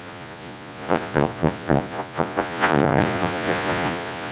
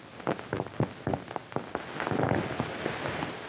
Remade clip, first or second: first